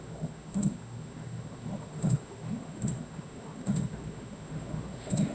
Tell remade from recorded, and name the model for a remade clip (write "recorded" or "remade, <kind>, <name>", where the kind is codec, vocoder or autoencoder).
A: remade, autoencoder, DAC-VAE